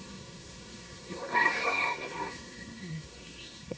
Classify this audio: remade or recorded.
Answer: remade